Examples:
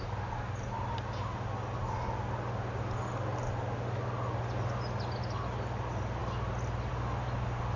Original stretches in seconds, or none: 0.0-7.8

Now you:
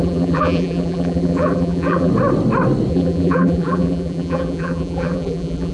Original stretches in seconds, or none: 2.1-2.9

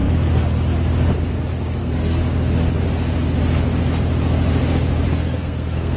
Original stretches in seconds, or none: 0.0-1.8; 2.2-5.2

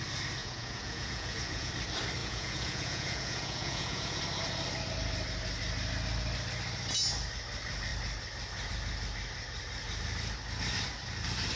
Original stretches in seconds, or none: 0.0-0.4; 1.7-2.2; 4.2-11.6

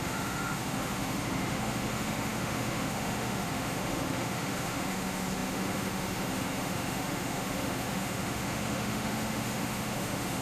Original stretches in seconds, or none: none

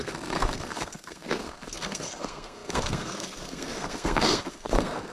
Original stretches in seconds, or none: none

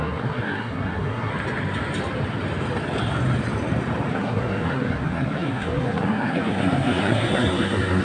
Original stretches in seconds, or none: 1.3-4.1

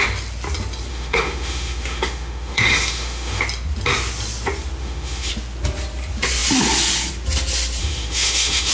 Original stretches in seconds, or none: 0.0-0.9; 3.4-4.8; 5.3-7.8